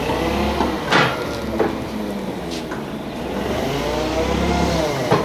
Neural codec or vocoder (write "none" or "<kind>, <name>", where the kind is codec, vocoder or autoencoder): none